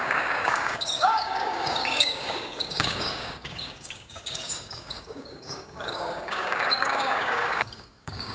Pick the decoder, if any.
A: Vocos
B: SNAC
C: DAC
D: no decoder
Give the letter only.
C